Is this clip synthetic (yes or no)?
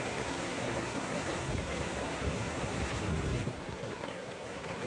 yes